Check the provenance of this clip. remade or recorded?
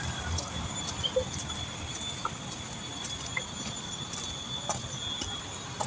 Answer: recorded